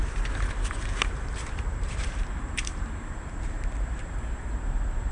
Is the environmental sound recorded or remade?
remade